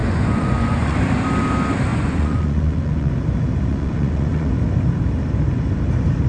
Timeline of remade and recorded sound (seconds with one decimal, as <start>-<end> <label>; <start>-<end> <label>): 0.0-1.0 remade; 1.0-1.9 recorded; 1.9-3.1 remade; 3.1-3.7 recorded; 3.7-4.5 remade; 4.5-6.3 recorded